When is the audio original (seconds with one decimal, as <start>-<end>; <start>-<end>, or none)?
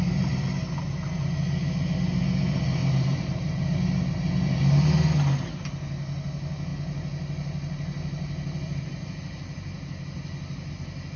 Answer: 0.0-2.8; 3.6-11.2